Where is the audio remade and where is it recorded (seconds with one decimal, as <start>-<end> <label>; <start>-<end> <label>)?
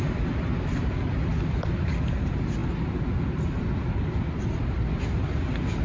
0.0-5.8 recorded